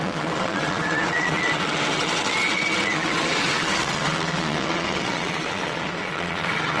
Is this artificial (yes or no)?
yes